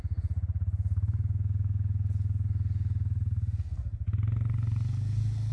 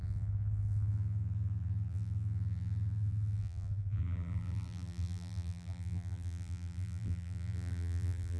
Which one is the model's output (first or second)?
second